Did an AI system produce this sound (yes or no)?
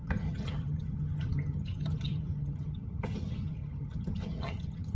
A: yes